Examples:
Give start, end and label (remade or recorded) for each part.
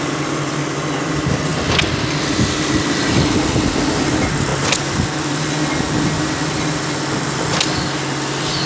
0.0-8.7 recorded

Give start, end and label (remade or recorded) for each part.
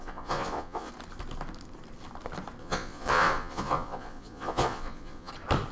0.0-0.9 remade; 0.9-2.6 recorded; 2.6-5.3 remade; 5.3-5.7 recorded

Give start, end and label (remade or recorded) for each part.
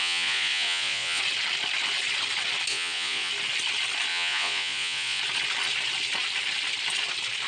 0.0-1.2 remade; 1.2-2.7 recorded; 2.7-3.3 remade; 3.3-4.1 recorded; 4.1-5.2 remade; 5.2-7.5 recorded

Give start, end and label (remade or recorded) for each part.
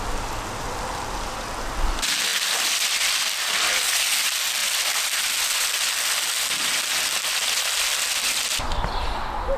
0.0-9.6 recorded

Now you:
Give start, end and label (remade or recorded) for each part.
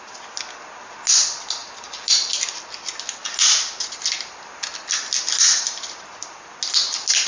0.0-7.3 recorded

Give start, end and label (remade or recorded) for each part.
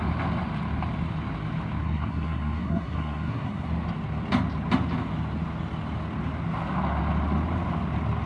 0.0-1.8 recorded; 1.8-3.7 remade; 3.7-8.3 recorded